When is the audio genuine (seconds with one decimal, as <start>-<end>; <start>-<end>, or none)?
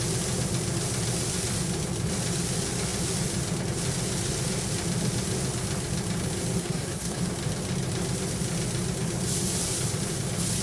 0.0-6.6; 7.2-10.6